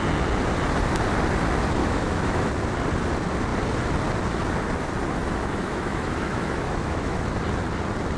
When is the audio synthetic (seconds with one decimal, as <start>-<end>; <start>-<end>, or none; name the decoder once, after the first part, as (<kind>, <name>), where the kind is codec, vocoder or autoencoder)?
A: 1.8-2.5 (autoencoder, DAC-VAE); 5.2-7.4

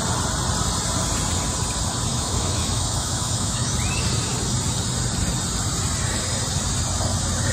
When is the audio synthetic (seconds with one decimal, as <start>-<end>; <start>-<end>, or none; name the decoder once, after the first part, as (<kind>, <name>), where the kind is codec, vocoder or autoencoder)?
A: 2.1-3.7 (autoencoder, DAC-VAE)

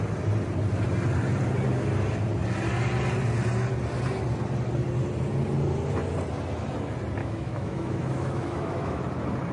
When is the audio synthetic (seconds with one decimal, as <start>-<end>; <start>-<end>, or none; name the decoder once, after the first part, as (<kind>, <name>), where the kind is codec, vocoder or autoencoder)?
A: 7.2-9.0 (autoencoder, DAC-VAE)

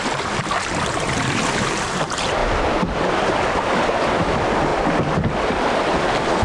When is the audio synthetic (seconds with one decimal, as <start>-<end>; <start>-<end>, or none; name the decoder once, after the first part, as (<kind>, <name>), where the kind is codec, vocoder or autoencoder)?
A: none

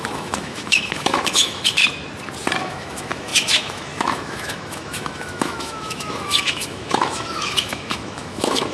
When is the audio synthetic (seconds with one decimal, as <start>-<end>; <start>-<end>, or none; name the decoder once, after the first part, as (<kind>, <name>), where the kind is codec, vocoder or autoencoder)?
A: 0.0-1.8 (autoencoder, DAC-VAE); 2.6-8.7